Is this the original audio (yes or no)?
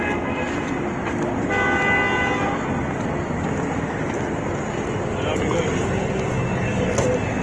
yes